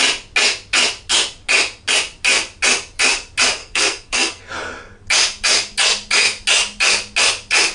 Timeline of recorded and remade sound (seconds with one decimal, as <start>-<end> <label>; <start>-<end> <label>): 0.0-3.6 recorded; 3.6-4.4 remade; 4.4-7.7 recorded